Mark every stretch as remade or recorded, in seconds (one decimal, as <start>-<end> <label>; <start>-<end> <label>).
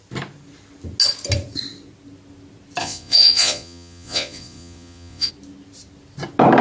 0.0-2.8 recorded; 2.8-5.3 remade; 5.3-6.6 recorded